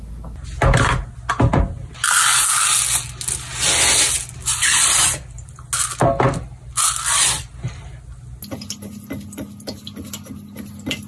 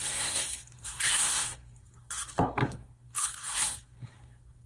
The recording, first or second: first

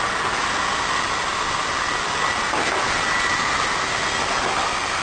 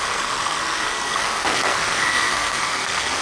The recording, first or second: first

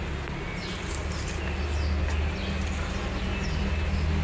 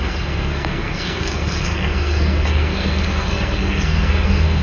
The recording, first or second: first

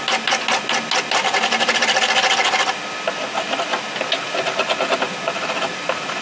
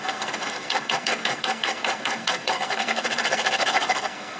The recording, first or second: first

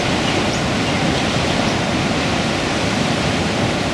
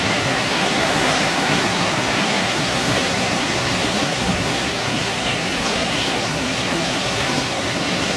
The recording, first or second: first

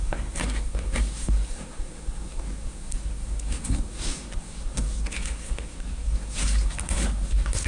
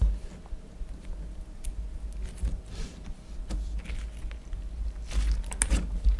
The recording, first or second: second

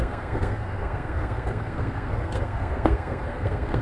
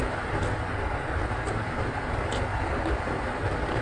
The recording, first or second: second